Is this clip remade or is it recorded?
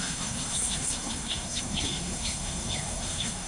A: remade